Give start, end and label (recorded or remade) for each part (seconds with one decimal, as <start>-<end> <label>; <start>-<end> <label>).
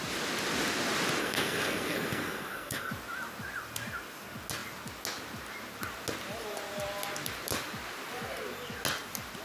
0.0-1.2 recorded; 1.2-2.9 remade; 2.9-9.4 recorded